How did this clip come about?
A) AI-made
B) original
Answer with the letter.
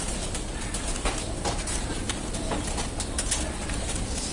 B